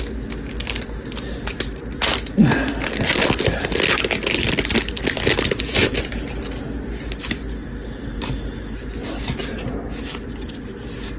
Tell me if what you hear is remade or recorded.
recorded